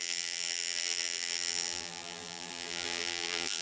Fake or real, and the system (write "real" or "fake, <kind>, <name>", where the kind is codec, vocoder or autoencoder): fake, vocoder, BigVGAN v2